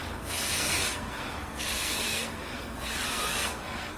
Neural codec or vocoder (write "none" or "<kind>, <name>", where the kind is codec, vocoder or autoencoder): codec, SNAC